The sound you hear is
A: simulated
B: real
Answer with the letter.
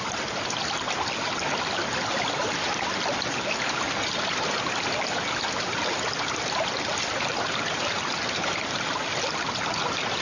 B